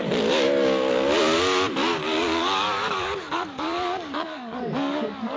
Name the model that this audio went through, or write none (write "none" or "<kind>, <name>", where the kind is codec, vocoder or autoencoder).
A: codec, DAC